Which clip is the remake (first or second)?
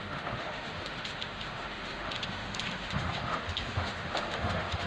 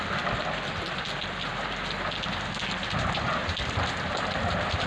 first